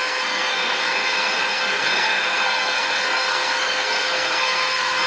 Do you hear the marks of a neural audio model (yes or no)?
yes